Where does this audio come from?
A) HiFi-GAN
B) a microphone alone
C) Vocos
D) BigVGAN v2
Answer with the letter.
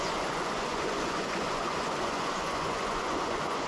C